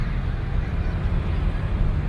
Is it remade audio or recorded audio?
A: recorded